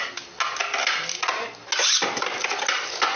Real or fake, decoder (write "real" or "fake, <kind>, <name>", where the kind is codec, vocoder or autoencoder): real